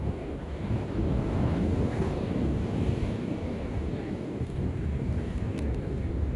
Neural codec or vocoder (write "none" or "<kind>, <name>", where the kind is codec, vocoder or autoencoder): codec, DAC